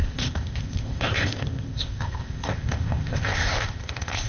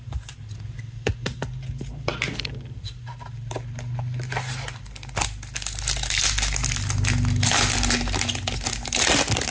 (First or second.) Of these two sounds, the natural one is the second